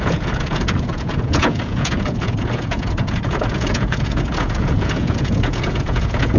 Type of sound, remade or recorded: remade